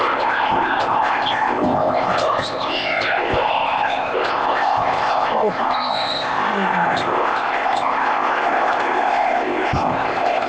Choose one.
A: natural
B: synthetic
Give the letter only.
B